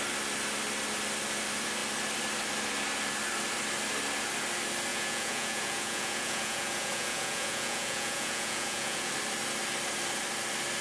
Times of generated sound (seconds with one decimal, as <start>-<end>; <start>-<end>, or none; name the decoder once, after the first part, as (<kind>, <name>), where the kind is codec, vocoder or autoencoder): 4.9-9.1 (vocoder, Vocos)